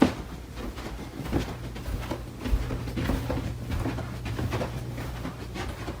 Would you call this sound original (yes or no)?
yes